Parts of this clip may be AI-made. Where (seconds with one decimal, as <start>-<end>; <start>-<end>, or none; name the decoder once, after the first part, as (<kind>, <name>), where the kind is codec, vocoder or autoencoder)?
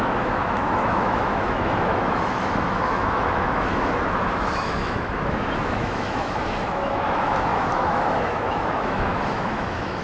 0.0-10.0 (autoencoder, DAC-VAE)